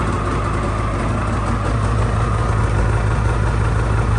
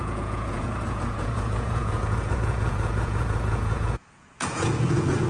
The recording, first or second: first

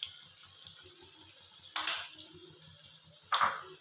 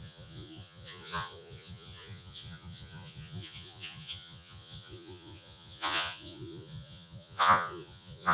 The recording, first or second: first